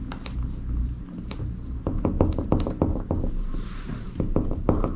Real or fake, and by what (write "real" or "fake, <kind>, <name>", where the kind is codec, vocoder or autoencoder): fake, vocoder, BigVGAN v2